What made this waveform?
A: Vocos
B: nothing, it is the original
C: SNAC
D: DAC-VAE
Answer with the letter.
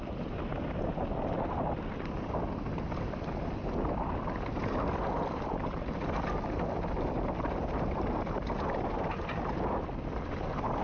B